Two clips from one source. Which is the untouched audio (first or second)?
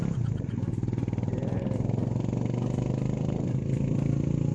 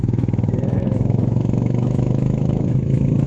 first